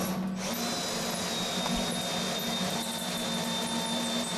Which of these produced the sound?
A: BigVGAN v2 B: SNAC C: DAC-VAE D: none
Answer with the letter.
D